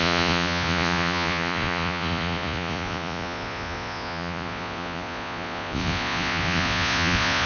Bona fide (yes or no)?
no